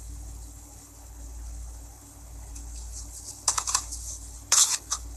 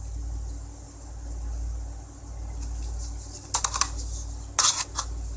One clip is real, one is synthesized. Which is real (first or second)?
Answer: second